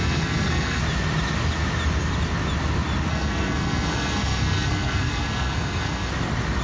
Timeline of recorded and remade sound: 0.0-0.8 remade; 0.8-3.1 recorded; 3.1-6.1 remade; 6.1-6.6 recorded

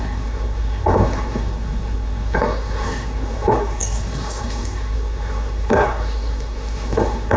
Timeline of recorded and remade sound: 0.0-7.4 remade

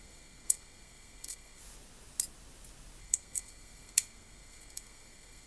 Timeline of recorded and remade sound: 0.0-1.6 remade; 1.6-3.0 recorded; 3.0-5.5 remade

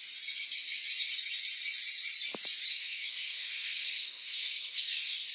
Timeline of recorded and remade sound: 0.0-2.7 recorded; 2.7-5.3 remade

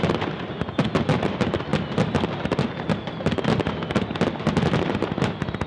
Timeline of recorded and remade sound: 0.0-5.7 recorded

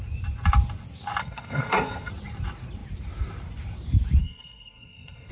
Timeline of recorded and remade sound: 0.0-1.2 recorded; 1.2-2.1 remade; 2.1-4.2 recorded; 4.2-5.3 remade

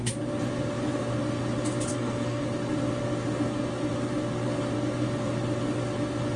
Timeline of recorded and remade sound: 0.0-1.9 recorded; 1.9-2.4 remade; 2.4-6.4 recorded